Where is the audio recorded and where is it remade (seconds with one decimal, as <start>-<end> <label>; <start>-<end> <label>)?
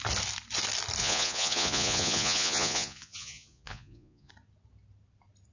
0.0-1.0 recorded; 1.0-4.3 remade; 4.3-5.5 recorded